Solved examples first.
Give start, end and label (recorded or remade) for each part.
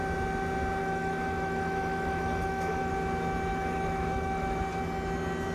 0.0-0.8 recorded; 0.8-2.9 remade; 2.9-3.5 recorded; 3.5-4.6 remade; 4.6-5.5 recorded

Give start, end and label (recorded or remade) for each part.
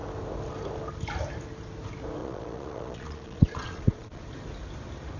0.0-2.2 recorded; 2.2-4.2 remade; 4.2-5.2 recorded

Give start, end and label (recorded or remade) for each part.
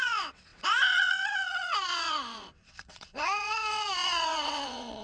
0.0-5.0 remade